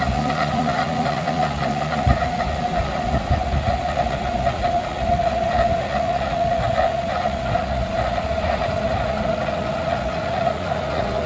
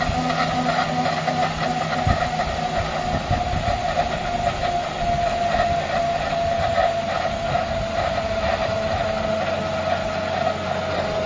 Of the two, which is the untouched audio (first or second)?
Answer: second